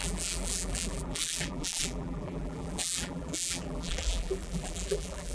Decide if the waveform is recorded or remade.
remade